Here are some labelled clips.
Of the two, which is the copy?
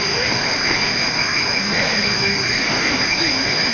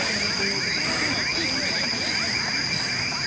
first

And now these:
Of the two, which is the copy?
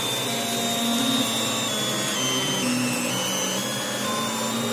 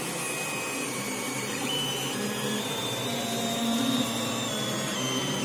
second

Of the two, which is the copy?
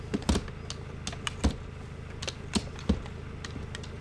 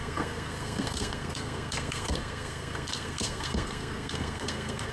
second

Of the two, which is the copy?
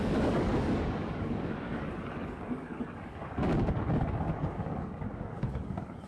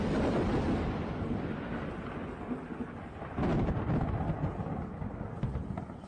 first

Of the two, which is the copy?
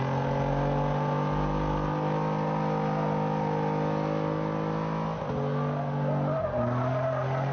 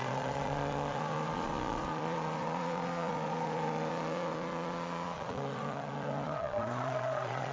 second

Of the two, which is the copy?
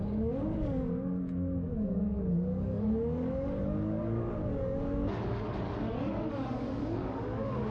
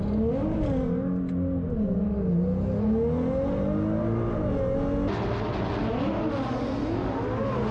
first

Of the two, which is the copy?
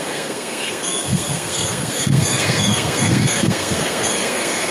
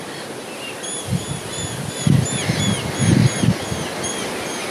first